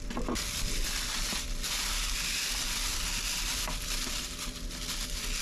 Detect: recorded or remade recorded